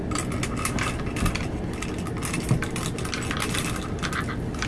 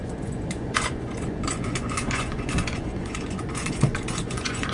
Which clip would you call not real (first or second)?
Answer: second